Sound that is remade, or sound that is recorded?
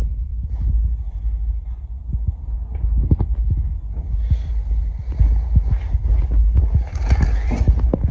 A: recorded